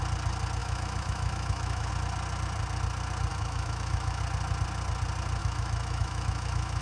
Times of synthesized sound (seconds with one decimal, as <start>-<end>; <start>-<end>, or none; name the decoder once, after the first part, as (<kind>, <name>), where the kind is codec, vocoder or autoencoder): 0.6-1.9 (autoencoder, DAC-VAE); 3.3-4.2; 5.4-6.8